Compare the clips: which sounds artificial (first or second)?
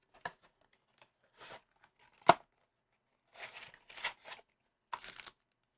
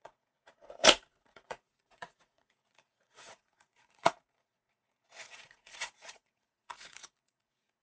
second